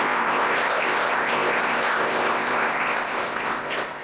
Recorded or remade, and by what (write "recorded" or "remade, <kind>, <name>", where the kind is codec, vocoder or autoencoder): remade, codec, ZipCodec